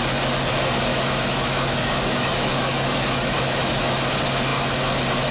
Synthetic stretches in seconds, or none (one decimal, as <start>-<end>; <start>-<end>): 0.9-4.1